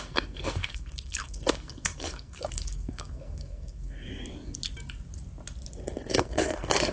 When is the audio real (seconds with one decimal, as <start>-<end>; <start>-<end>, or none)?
4.1-6.1